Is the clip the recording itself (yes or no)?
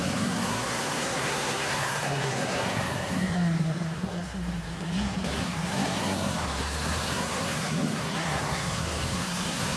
no